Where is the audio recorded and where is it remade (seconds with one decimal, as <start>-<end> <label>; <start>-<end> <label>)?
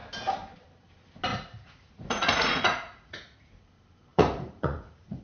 0.0-1.3 recorded; 1.3-3.5 remade; 3.5-4.1 recorded; 4.1-5.2 remade